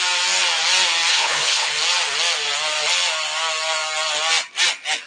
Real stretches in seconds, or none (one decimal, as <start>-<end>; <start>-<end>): 0.0-1.1; 1.7-5.1